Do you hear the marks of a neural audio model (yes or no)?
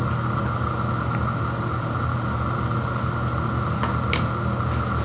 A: no